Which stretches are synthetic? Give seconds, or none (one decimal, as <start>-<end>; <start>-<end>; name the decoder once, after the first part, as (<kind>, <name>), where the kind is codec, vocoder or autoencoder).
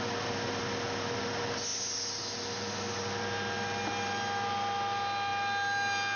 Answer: none